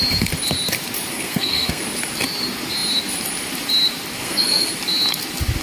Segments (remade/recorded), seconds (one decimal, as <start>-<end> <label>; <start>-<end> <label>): 0.0-1.1 recorded; 1.1-1.8 remade; 1.8-4.2 recorded; 4.2-4.7 remade; 4.7-5.6 recorded